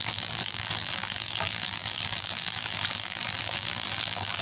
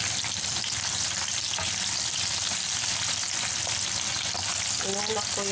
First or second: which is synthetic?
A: first